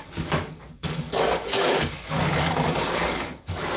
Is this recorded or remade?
remade